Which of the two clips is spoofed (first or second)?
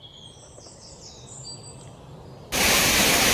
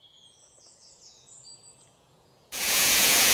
second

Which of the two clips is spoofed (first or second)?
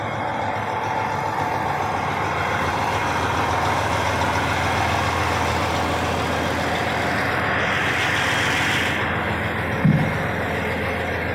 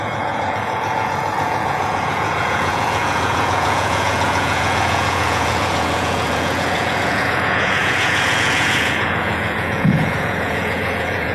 second